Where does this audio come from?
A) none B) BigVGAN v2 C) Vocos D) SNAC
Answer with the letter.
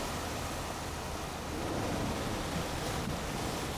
A